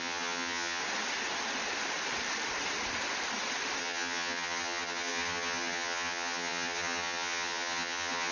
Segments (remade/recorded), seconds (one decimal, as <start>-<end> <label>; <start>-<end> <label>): 0.0-0.8 remade; 0.8-3.8 recorded; 3.8-8.3 remade

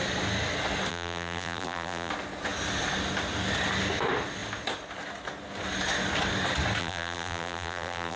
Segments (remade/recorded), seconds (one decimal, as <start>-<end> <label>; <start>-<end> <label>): 0.0-0.9 recorded; 0.9-2.1 remade; 2.1-6.8 recorded; 6.8-8.2 remade